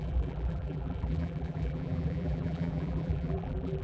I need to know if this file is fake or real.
fake